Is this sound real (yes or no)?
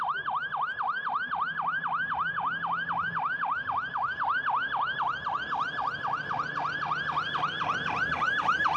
yes